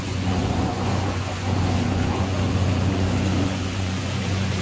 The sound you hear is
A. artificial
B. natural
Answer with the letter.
A